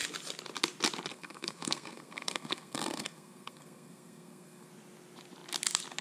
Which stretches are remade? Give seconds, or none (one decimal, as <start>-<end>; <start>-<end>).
1.1-4.7